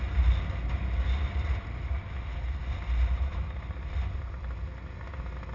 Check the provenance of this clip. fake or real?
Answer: real